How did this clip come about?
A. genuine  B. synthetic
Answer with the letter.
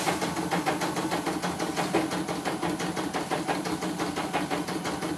A